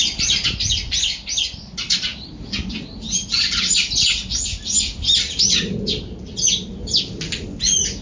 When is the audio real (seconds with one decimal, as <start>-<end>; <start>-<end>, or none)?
0.0-8.0